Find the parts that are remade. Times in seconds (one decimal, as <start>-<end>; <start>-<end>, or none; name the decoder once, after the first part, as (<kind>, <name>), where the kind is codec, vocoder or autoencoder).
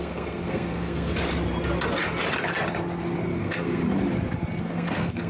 0.0-1.1 (codec, SNAC); 3.4-3.8; 4.6-5.3